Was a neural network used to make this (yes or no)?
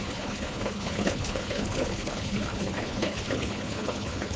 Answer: yes